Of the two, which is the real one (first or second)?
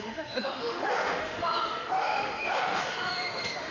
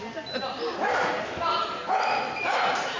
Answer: second